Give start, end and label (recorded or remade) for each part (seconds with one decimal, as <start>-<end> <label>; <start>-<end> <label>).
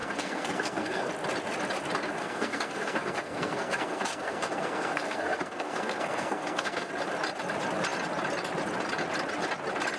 0.0-1.1 remade; 1.1-2.2 recorded; 2.2-6.9 remade; 6.9-10.0 recorded